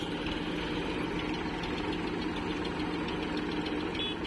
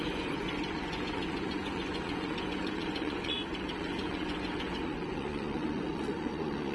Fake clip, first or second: second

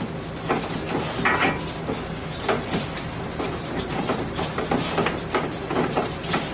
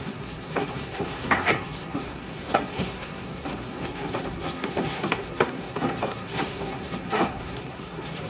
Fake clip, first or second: second